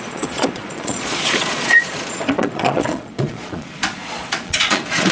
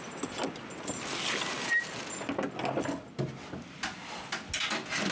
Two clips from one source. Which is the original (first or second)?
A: second